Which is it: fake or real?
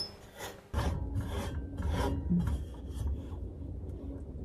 real